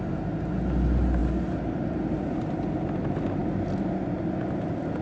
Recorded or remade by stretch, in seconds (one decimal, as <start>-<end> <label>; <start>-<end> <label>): 0.0-5.0 recorded